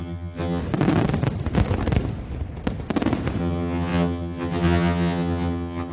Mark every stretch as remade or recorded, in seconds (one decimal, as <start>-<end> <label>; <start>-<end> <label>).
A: 0.0-0.6 remade; 0.6-3.4 recorded; 3.4-5.9 remade

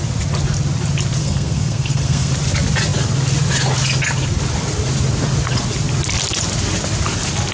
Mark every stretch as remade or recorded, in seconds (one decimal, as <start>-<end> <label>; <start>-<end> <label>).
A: 0.0-1.2 recorded; 1.2-2.3 remade; 2.3-7.5 recorded

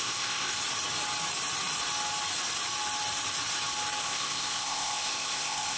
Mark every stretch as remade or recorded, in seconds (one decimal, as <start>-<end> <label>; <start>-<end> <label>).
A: 0.0-0.6 remade; 0.6-4.0 recorded; 4.0-5.8 remade